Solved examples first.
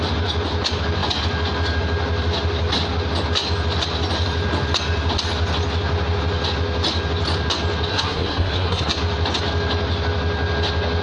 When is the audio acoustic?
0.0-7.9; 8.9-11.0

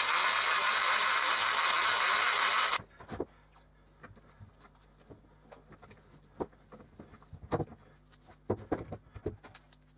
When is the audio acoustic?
0.0-10.0

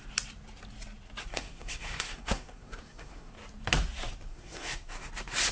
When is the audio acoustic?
0.0-1.2; 3.3-4.3; 5.1-5.5

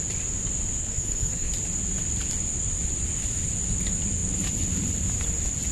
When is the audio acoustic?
0.0-0.8; 1.5-5.7

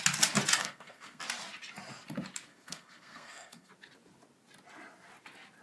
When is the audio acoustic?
0.0-0.6; 1.2-2.5; 3.7-5.6

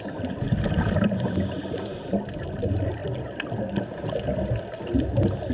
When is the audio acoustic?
0.0-5.5

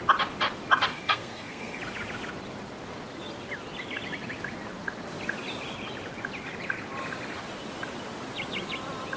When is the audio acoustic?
0.0-0.9; 1.8-9.2

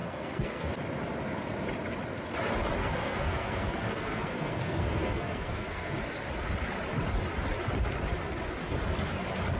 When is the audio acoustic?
0.7-2.8; 5.9-9.6